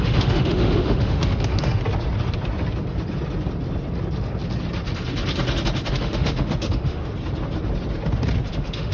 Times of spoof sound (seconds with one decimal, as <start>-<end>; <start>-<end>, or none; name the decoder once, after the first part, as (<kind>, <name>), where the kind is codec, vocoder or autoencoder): 0.0-1.8 (autoencoder, DAC-VAE); 5.9-7.0; 8.5-8.9